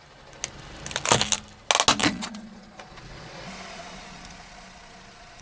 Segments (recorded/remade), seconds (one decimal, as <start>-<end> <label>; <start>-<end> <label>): 0.0-2.0 recorded; 2.0-5.4 remade